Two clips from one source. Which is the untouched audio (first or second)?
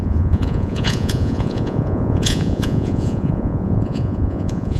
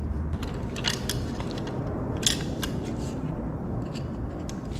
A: second